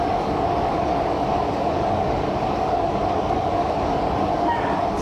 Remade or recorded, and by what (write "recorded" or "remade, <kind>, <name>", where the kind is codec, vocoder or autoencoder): remade, codec, DAC